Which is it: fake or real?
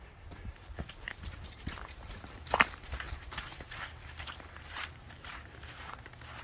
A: fake